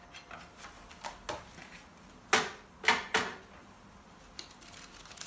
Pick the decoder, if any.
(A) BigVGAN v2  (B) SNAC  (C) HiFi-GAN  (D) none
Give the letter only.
D